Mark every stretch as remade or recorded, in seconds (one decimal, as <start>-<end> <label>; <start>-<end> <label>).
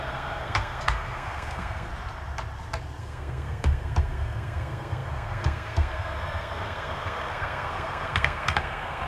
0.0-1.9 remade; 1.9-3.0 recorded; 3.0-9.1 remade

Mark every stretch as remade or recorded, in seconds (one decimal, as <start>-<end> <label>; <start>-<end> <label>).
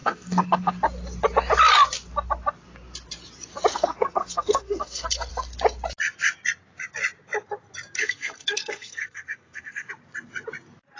0.0-0.7 remade; 0.7-3.7 recorded; 3.7-5.3 remade; 5.3-8.0 recorded; 8.0-9.9 remade; 9.9-11.0 recorded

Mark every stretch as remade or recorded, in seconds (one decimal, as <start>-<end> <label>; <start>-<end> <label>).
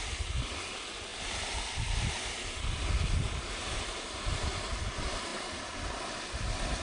0.0-6.8 recorded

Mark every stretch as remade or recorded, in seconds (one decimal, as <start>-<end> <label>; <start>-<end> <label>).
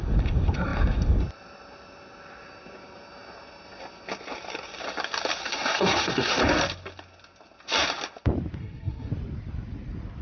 0.0-5.4 recorded; 5.4-6.4 remade; 6.4-8.6 recorded; 8.6-9.1 remade; 9.1-10.2 recorded